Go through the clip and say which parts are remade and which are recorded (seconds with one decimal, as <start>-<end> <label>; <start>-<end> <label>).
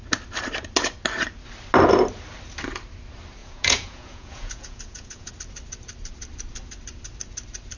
0.0-3.4 recorded; 3.4-5.3 remade; 5.3-7.8 recorded